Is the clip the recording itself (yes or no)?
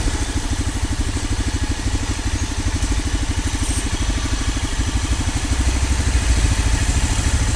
yes